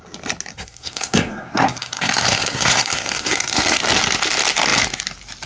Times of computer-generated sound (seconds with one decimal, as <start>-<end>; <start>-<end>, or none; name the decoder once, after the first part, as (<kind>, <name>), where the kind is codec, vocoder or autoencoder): 0.5-3.8 (codec, SNAC)